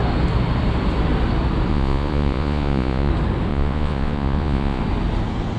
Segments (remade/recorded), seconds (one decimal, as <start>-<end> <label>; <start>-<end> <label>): 0.0-1.7 recorded; 1.7-3.1 remade; 3.1-3.5 recorded; 3.5-4.8 remade; 4.8-5.6 recorded

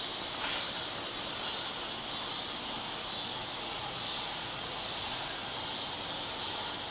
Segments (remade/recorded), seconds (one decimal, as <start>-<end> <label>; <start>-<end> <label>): 0.0-3.4 recorded; 3.4-5.5 remade; 5.5-6.9 recorded